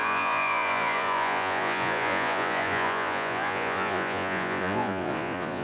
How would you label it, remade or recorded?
remade